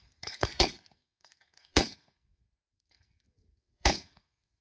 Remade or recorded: remade